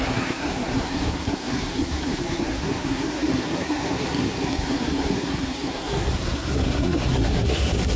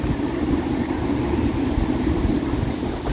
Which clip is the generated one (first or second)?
first